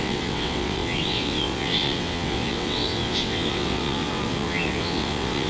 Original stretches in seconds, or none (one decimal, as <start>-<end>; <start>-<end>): none